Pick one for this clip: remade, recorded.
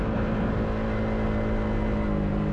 recorded